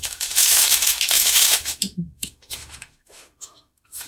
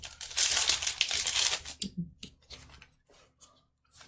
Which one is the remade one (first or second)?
first